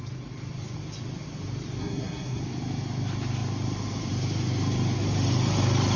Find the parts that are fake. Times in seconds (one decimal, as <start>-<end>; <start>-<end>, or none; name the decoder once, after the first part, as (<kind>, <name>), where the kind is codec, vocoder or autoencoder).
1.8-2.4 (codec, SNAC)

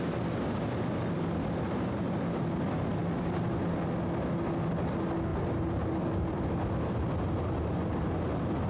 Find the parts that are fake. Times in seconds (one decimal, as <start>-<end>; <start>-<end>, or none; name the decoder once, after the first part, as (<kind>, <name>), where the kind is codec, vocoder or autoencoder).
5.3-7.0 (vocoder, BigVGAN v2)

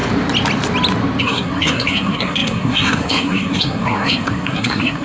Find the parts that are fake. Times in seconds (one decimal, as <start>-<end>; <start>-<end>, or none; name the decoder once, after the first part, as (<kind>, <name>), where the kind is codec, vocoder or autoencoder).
1.2-5.0 (codec, SNAC)

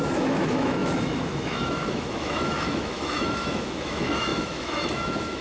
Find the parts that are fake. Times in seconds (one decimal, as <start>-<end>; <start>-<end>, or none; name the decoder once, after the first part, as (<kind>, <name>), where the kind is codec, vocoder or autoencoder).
0.0-5.4 (autoencoder, DAC-VAE)